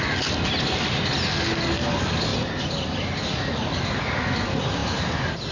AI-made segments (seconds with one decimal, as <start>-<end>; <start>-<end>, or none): 2.3-3.7; 4.8-5.5